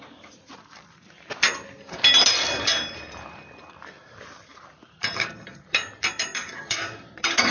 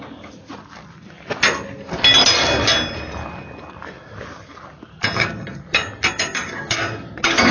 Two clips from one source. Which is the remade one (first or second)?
first